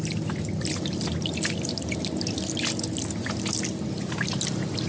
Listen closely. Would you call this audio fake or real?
real